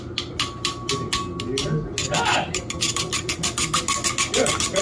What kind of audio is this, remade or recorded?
recorded